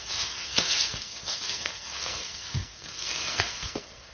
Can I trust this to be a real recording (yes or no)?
no